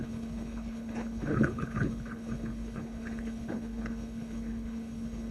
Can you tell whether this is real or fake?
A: fake